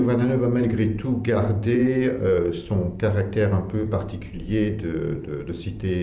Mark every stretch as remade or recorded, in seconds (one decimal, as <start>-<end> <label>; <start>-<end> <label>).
0.0-0.6 recorded; 0.6-6.0 remade